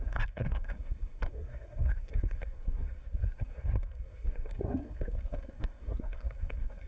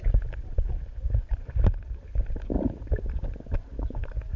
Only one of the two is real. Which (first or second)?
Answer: second